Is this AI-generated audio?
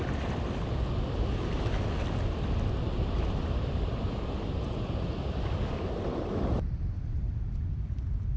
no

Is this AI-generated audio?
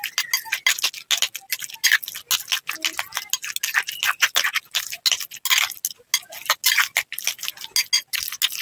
no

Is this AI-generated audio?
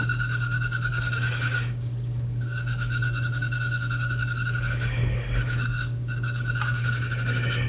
yes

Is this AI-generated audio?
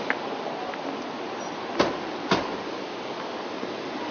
no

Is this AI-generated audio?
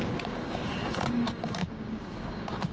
yes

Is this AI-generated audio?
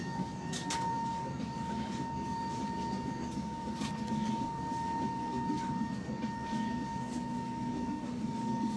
yes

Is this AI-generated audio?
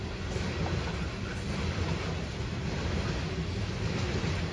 no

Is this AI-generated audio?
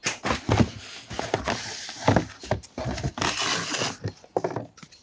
no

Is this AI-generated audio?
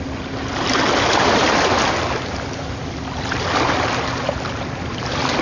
no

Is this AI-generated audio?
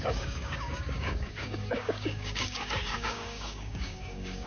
yes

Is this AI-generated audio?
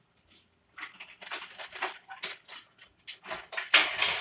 no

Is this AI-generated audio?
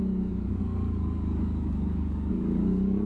yes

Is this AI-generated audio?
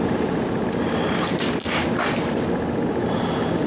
no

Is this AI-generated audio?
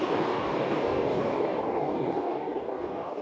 yes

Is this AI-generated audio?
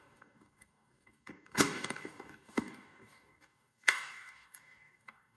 yes